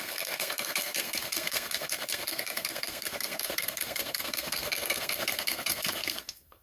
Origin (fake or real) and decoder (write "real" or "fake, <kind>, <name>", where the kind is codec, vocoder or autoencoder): fake, codec, SNAC